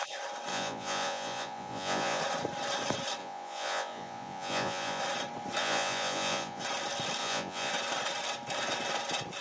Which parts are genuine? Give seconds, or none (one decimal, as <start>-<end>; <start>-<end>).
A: 0.0-0.5; 2.2-3.2; 5.0-5.6; 6.6-7.2; 7.7-9.4